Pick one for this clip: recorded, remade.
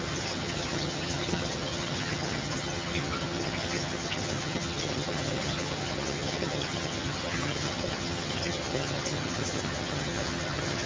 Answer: remade